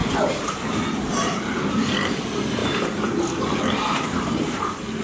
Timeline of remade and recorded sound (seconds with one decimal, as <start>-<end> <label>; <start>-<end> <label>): 0.0-0.5 remade; 0.5-2.6 recorded; 2.6-3.6 remade; 3.6-5.0 recorded